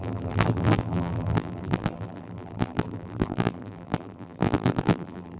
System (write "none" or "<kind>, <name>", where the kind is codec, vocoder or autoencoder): vocoder, BigVGAN v2